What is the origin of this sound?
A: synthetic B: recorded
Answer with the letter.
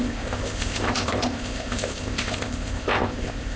A